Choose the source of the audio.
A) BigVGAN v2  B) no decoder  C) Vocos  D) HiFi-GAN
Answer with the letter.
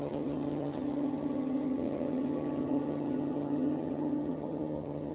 D